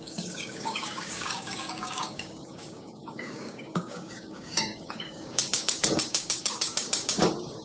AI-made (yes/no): yes